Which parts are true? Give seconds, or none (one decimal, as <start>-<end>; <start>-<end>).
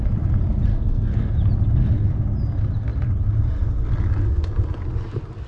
0.0-0.7; 1.3-5.5